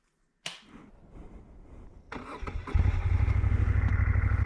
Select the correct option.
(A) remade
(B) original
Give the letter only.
B